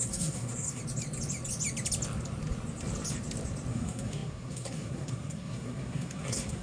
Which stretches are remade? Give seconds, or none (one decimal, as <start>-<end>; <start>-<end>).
0.0-0.8; 3.7-6.6